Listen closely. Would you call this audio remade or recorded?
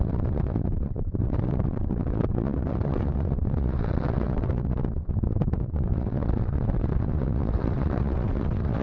remade